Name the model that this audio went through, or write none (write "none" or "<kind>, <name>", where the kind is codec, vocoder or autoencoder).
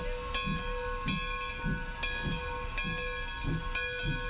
none